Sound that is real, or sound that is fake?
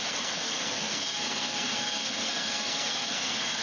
fake